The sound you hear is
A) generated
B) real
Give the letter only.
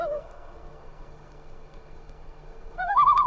A